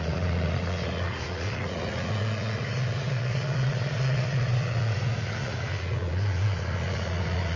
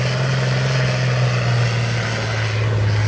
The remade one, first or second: first